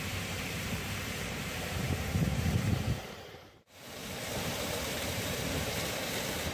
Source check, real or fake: fake